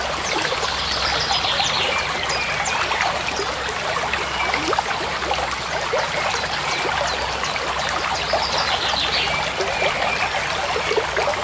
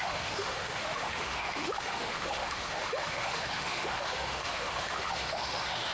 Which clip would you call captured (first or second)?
first